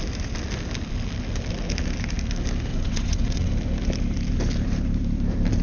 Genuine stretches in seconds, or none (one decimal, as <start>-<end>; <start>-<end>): 0.0-2.7; 3.5-5.6

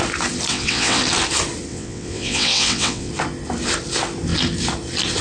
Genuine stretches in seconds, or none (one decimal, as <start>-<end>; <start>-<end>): 0.0-0.5; 1.0-1.7; 3.1-5.2

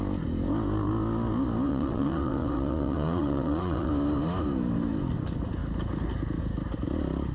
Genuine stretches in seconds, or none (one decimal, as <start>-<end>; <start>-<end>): 0.0-1.7; 3.9-7.3

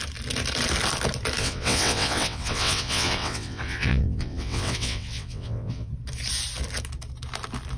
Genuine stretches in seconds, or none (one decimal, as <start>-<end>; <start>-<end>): 0.0-1.4; 5.9-7.8

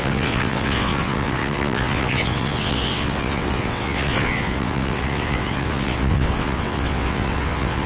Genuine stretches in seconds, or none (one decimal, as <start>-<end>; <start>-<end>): none

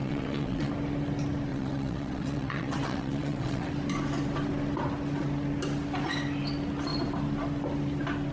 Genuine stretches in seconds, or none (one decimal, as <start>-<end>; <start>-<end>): 0.7-1.5; 3.7-8.3

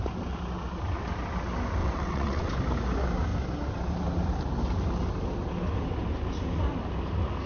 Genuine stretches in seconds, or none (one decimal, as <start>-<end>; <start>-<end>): 0.0-1.8; 2.5-7.5

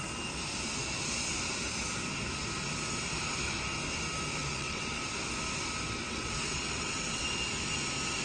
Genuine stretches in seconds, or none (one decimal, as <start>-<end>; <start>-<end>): 0.0-4.4; 5.0-6.0; 7.2-8.2